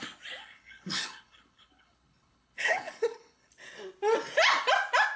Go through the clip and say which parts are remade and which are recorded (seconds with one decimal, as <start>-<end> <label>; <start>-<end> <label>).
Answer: 0.0-0.4 recorded; 0.4-3.5 remade; 3.5-5.2 recorded